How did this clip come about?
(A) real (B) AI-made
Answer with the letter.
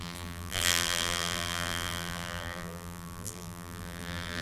B